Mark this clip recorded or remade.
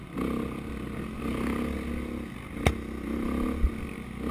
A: recorded